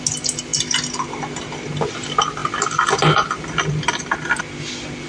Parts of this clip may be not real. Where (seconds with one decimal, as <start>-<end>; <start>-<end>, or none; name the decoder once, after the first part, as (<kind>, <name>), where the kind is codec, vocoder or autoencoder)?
none